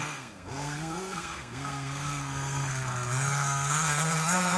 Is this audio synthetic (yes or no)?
yes